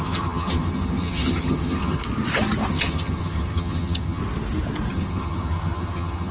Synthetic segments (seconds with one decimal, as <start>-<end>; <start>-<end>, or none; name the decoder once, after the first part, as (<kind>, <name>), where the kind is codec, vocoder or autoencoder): 0.0-2.0 (vocoder, HiFi-GAN); 2.7-4.2; 4.9-6.3